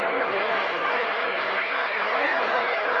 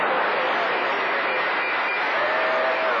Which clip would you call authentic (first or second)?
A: second